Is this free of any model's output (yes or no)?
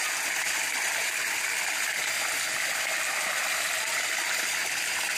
yes